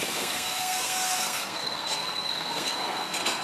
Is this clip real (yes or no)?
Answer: no